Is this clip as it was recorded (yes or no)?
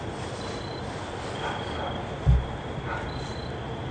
yes